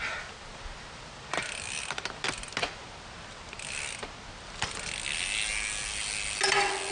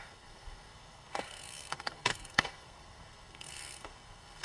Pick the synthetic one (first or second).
second